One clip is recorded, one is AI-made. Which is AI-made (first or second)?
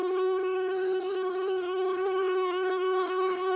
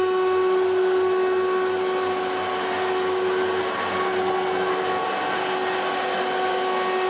first